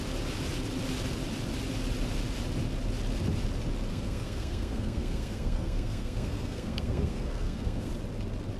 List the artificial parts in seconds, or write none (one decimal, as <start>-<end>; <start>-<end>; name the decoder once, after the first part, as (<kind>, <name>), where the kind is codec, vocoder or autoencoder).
3.9-7.9 (codec, SNAC)